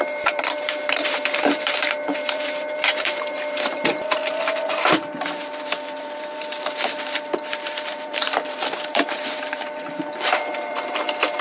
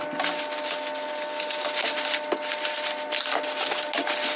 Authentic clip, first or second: second